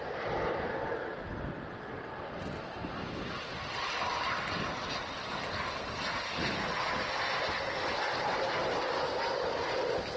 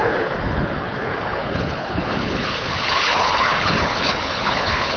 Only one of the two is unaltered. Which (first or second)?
first